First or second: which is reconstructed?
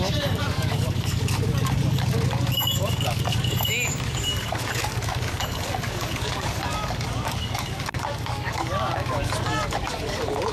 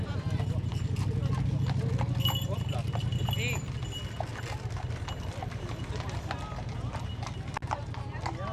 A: first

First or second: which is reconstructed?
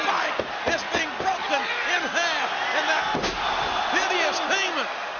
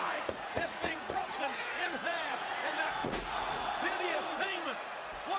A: second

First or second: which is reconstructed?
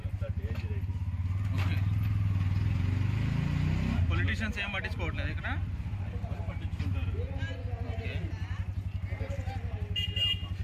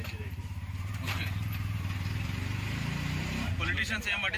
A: second